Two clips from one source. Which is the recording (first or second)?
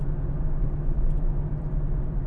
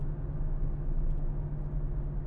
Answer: second